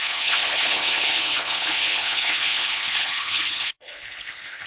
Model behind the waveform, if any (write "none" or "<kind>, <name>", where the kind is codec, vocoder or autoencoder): codec, HILCodec